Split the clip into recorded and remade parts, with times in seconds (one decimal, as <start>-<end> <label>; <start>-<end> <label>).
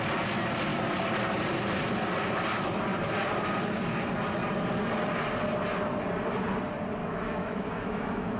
0.0-7.0 recorded; 7.0-8.4 remade